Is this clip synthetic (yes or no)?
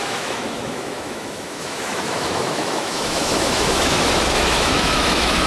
yes